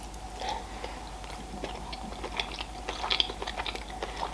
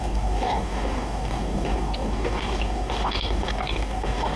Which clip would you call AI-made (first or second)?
second